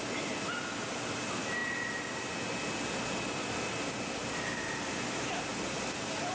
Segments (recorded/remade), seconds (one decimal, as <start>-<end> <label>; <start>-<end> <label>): 0.0-6.3 recorded